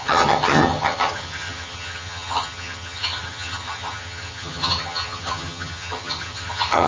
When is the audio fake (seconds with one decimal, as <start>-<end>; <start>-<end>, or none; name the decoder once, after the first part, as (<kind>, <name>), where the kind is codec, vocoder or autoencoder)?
0.0-6.9 (vocoder, HiFi-GAN)